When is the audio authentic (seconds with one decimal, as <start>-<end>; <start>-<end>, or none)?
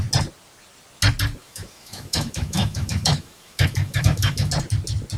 0.0-1.4; 4.5-5.2